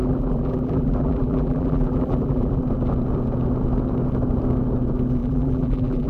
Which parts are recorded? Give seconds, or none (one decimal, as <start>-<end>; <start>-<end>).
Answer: 2.6-5.2